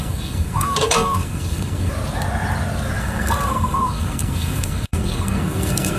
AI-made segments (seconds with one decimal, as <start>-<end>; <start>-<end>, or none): 0.0-1.9; 3.0-6.0